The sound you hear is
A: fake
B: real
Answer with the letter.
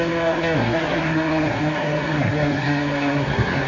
A